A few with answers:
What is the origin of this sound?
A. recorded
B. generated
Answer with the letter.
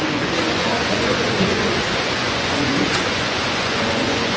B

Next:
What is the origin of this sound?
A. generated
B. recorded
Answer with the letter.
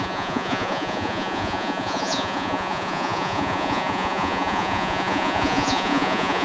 A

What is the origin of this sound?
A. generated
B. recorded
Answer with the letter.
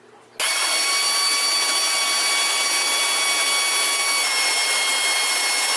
B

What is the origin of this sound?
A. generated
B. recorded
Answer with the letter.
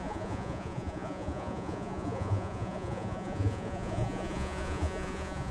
A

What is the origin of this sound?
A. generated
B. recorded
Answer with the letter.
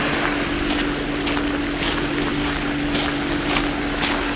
B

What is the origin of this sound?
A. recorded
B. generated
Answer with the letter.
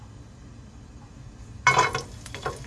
A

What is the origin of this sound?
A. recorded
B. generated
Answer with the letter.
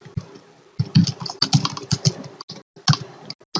A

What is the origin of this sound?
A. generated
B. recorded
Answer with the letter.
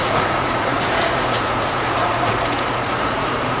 A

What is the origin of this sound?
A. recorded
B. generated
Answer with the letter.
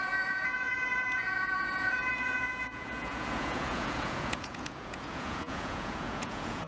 B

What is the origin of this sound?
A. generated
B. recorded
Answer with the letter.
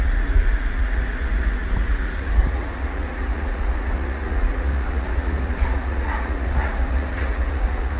A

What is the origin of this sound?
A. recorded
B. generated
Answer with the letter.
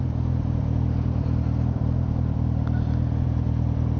A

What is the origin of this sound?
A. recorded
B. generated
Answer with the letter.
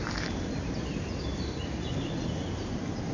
A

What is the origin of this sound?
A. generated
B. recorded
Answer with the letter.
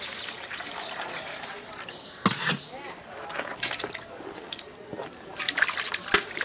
B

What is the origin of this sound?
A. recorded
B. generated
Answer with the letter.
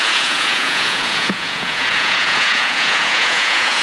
B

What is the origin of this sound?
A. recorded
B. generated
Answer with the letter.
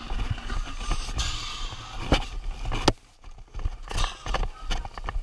A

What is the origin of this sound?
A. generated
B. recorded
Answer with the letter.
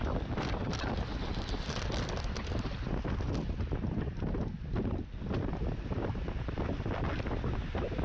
B